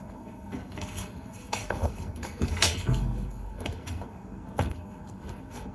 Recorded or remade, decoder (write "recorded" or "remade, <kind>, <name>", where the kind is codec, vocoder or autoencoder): remade, codec, SNAC